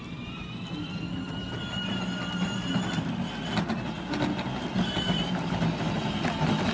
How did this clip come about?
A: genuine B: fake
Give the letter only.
A